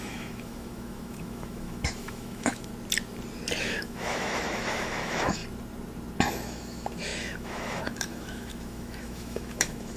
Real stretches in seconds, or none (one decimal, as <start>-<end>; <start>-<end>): 2.7-3.6; 5.4-6.3